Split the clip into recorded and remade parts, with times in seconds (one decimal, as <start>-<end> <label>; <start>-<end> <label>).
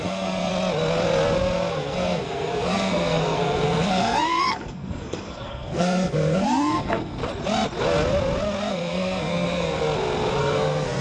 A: 0.0-0.5 remade; 0.5-1.7 recorded; 1.7-7.2 remade; 7.2-8.7 recorded; 8.7-9.8 remade; 9.8-10.4 recorded; 10.4-11.0 remade